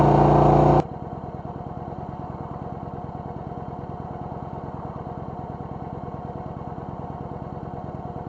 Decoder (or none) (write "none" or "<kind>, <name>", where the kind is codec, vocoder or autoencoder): none